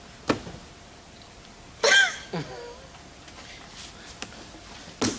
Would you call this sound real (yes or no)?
yes